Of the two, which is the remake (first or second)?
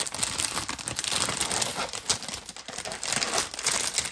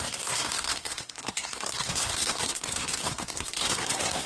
second